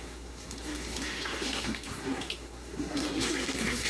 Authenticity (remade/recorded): remade